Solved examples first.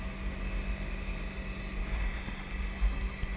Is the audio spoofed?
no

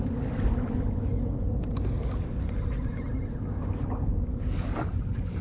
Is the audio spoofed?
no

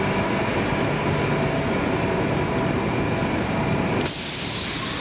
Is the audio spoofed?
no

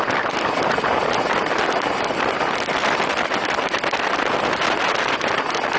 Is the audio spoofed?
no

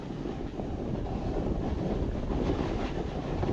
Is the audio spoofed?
no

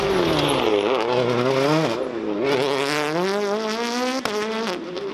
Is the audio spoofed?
no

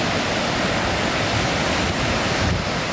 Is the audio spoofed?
no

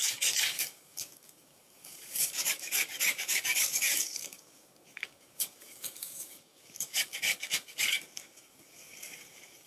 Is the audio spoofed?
yes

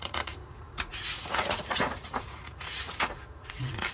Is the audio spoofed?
yes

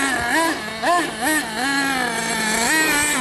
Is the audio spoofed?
no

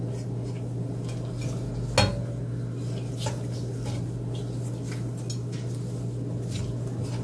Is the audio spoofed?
no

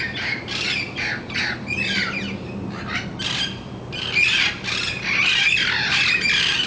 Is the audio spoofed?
no